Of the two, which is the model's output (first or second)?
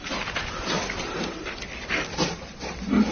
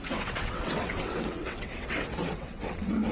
second